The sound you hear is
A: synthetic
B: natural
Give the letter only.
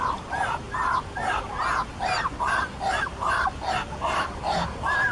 B